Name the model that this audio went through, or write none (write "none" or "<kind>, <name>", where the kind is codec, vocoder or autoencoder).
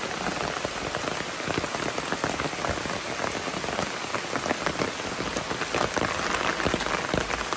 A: none